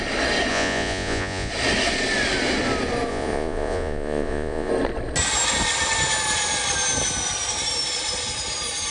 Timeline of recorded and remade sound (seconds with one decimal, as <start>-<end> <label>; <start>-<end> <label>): 0.0-0.5 recorded; 0.5-1.5 remade; 1.5-3.1 recorded; 3.1-4.7 remade; 4.7-8.9 recorded

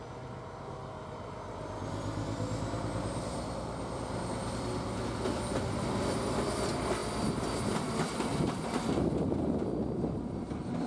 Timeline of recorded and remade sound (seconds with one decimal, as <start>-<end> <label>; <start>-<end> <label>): 0.0-10.9 recorded

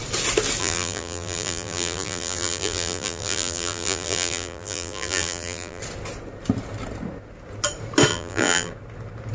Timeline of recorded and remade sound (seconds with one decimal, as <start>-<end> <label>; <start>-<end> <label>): 0.0-0.6 recorded; 0.6-5.8 remade; 5.8-8.1 recorded; 8.1-8.7 remade; 8.7-9.3 recorded

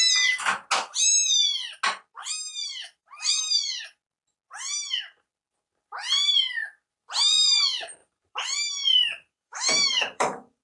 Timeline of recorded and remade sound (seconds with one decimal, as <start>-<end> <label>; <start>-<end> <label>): 0.0-2.2 recorded; 2.2-3.4 remade; 3.4-8.0 recorded; 8.0-10.6 remade

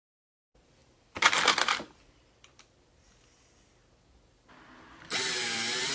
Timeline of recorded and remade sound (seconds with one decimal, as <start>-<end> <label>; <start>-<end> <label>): 0.0-0.8 recorded; 0.8-2.9 remade; 2.9-5.9 recorded

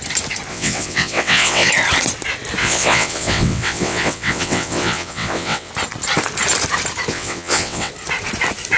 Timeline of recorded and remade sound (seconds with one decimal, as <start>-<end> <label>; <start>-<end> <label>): 0.0-0.5 recorded; 0.5-1.7 remade; 1.7-2.6 recorded; 2.6-5.7 remade; 5.7-7.1 recorded; 7.1-7.9 remade; 7.9-8.8 recorded

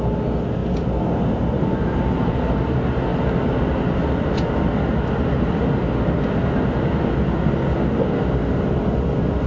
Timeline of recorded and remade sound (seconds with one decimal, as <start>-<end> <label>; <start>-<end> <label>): 0.0-9.5 recorded